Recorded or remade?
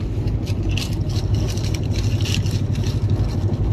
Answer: recorded